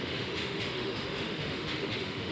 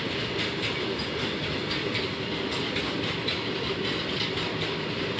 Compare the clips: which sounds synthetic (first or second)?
first